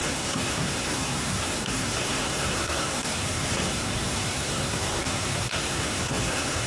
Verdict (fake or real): fake